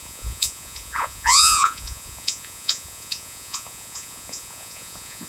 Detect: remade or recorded remade